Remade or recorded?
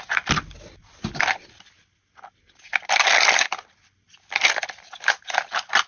recorded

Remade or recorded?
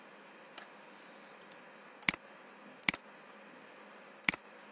recorded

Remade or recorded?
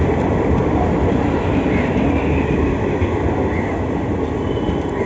recorded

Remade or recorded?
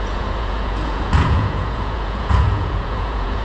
remade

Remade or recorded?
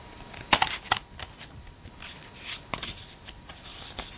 recorded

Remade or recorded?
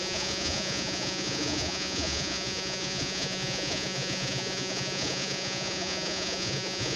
remade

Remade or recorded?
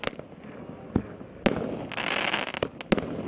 recorded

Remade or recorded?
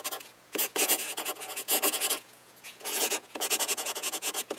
remade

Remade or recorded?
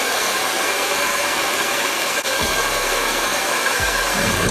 remade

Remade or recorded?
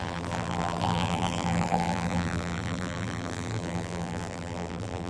remade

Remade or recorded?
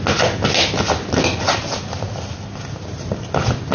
recorded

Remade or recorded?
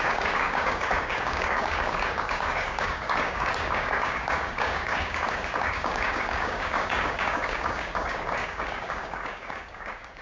remade